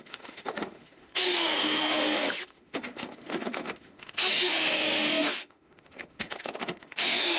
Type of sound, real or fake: fake